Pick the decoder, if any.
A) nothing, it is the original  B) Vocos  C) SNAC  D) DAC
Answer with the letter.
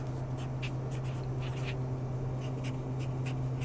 A